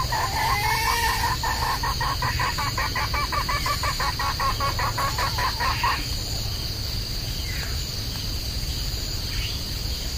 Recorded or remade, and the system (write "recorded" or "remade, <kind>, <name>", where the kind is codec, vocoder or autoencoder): recorded